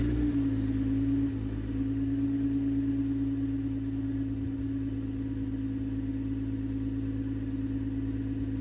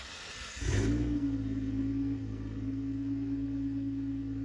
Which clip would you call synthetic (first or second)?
second